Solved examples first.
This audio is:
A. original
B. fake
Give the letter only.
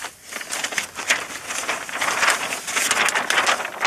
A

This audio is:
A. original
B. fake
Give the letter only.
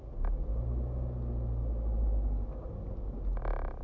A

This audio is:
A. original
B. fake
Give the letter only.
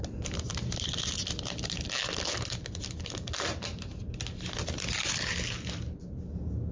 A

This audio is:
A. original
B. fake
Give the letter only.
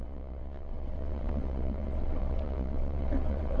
B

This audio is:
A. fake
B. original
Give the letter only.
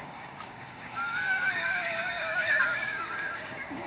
A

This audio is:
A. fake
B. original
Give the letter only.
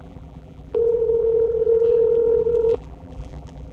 A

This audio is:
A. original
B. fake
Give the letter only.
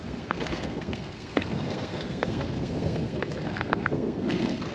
B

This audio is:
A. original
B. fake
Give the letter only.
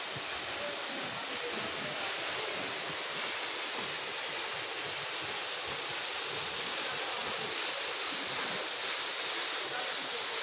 A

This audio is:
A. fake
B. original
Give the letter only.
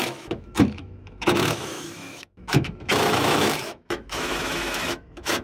A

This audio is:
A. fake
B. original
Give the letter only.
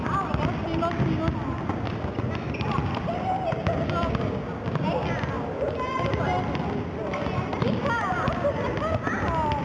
B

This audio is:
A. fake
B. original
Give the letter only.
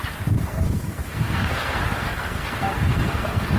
A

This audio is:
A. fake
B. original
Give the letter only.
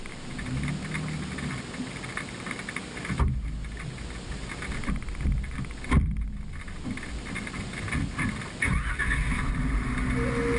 B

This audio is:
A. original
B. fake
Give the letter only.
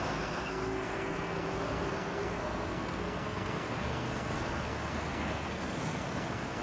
B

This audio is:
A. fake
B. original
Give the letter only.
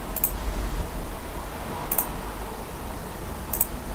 B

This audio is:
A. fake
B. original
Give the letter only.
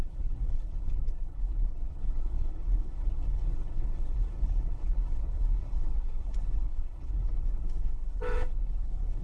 A